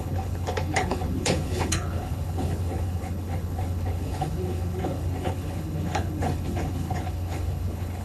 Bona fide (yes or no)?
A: no